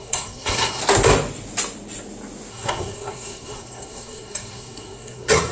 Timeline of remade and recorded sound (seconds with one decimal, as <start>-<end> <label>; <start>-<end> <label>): 0.0-0.8 remade; 0.8-2.5 recorded; 2.5-5.5 remade